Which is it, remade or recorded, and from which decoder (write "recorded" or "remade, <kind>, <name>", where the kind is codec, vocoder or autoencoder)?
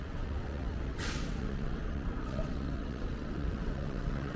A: remade, vocoder, WaveNeXt